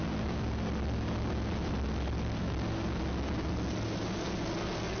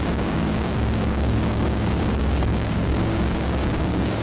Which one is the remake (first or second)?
second